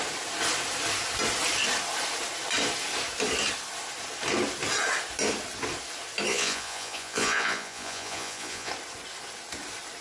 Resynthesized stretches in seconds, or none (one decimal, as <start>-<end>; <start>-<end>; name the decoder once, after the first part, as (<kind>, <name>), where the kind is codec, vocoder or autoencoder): 6.3-8.7 (vocoder, Vocos)